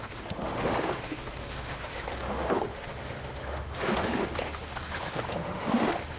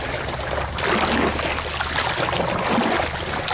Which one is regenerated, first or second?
first